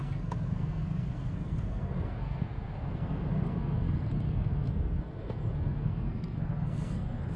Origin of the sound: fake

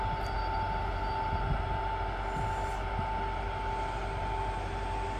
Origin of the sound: real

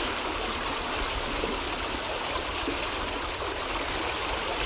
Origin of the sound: real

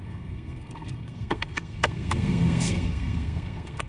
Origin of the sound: fake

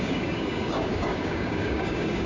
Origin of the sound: fake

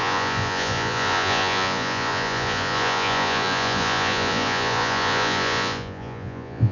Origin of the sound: fake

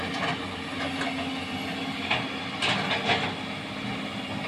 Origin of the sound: real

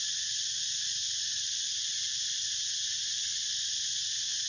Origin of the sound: real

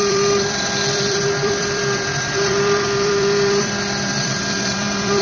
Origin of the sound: fake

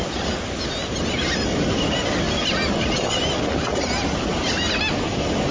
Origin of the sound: real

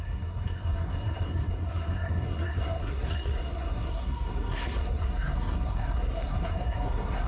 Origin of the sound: fake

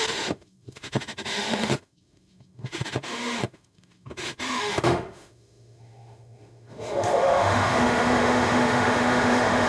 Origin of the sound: fake